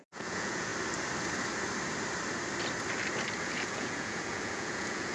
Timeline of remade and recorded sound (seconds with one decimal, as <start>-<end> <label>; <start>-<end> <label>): 0.0-0.7 remade; 0.7-3.4 recorded; 3.4-5.1 remade